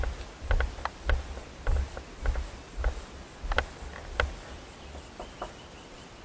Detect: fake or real real